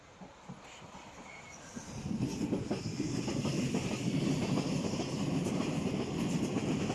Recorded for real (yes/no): yes